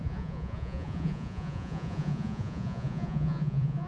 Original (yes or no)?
no